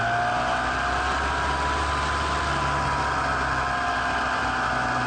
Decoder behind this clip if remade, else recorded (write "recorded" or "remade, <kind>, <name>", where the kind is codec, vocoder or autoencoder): recorded